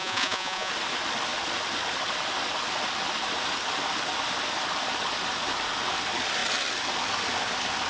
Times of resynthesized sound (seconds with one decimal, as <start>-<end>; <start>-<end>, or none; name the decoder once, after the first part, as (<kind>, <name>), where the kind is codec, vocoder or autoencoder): 0.0-0.7 (vocoder, Vocos)